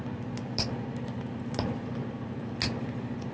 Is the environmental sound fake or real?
real